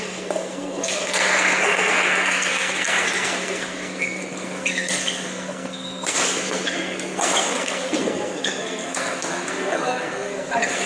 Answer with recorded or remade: remade